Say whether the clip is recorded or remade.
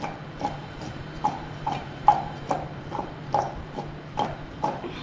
remade